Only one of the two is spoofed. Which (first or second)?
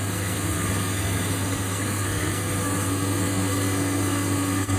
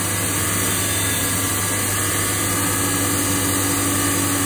first